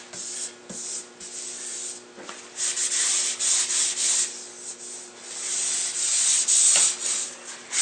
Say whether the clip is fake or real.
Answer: real